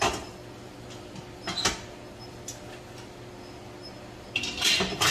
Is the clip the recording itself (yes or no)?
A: yes